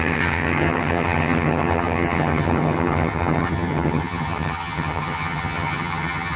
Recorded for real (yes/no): no